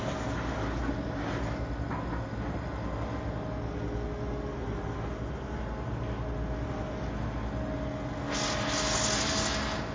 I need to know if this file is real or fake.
real